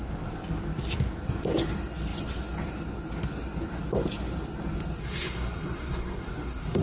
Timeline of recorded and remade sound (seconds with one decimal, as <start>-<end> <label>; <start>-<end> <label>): 0.0-5.0 recorded; 5.0-6.8 remade